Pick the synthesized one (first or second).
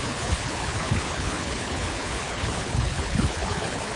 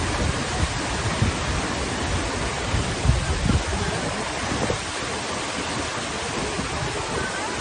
first